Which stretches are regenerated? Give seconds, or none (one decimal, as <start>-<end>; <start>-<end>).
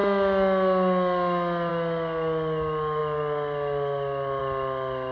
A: none